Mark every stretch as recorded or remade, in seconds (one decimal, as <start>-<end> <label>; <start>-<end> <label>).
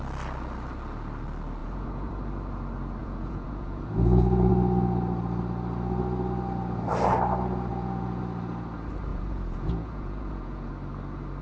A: 0.0-1.6 recorded; 1.6-2.1 remade; 2.1-3.0 recorded; 3.0-4.5 remade; 4.5-7.7 recorded; 7.7-8.2 remade; 8.2-9.1 recorded; 9.1-10.7 remade; 10.7-11.4 recorded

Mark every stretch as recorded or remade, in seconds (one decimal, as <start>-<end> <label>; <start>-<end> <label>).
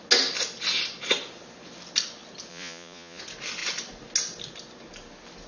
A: 0.0-2.5 recorded; 2.5-3.2 remade; 3.2-5.5 recorded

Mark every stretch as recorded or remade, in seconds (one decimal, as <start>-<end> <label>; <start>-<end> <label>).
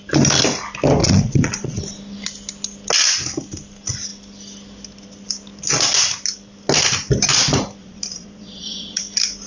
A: 0.0-1.0 recorded; 1.0-1.8 remade; 1.8-7.8 recorded; 7.8-9.0 remade; 9.0-9.5 recorded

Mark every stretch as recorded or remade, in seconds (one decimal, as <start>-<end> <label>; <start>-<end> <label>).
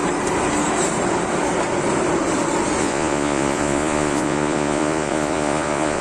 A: 0.0-2.8 recorded; 2.8-6.0 remade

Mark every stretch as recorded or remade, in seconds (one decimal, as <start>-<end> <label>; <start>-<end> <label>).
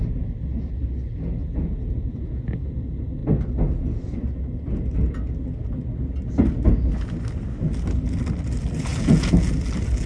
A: 0.0-1.4 recorded; 1.4-2.6 remade; 2.6-8.9 recorded; 8.9-9.5 remade; 9.5-10.1 recorded